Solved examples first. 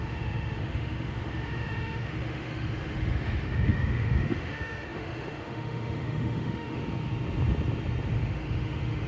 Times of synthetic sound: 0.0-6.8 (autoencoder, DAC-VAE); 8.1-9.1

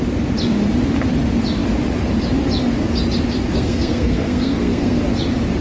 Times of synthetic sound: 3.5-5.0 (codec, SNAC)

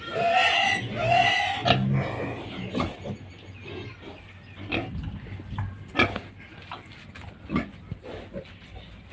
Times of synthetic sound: none

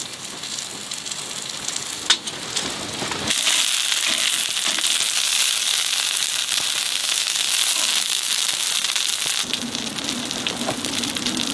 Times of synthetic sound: 7.0-7.5 (autoencoder, DAC-VAE); 7.9-8.7

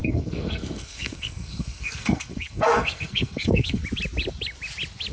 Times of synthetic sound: 0.0-3.8 (codec, SNAC)

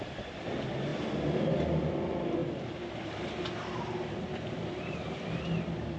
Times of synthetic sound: 0.0-6.0 (vocoder, BigVGAN v2)

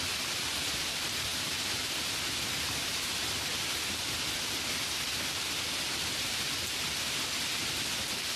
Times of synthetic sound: none